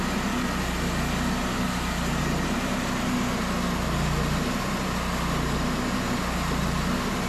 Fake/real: real